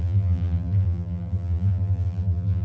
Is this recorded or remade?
remade